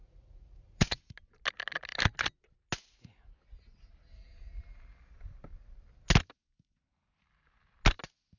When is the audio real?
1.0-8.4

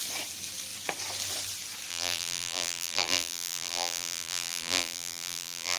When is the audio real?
0.0-1.9

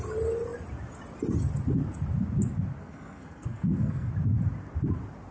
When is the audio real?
0.0-2.8; 4.1-5.3

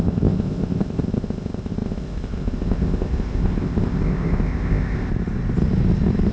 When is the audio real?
5.1-6.3

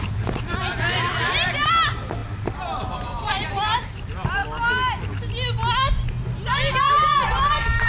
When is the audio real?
4.4-6.8